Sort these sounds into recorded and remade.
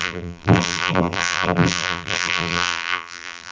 remade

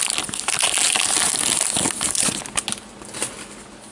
recorded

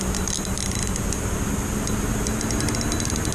recorded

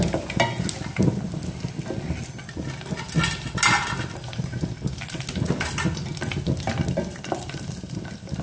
recorded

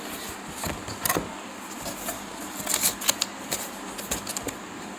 recorded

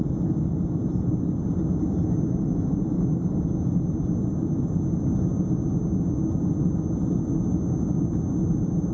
recorded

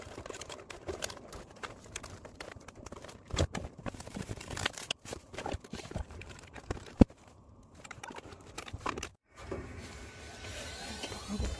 remade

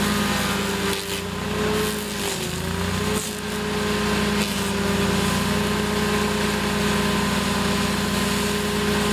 recorded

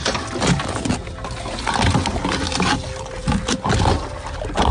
recorded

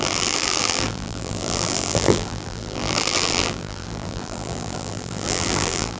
remade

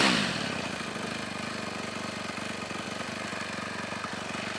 recorded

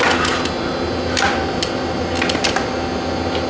recorded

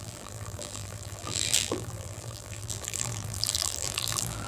remade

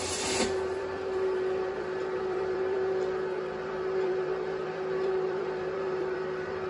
remade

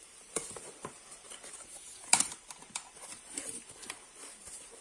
remade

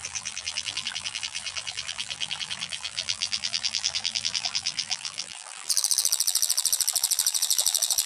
remade